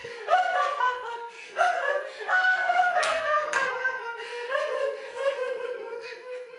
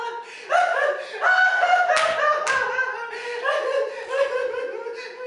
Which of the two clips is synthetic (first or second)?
first